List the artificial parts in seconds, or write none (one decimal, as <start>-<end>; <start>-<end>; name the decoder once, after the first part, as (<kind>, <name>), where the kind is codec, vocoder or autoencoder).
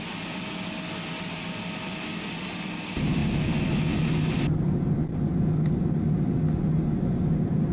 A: none